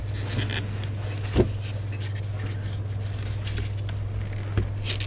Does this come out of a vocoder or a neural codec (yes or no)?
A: no